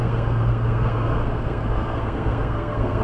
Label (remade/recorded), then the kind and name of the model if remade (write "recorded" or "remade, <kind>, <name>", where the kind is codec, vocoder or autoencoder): remade, codec, SNAC